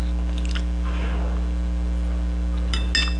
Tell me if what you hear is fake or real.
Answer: real